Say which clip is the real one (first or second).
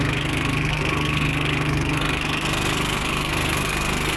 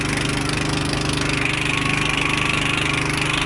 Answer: second